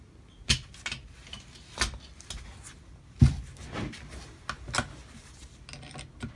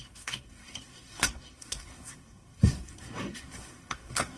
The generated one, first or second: second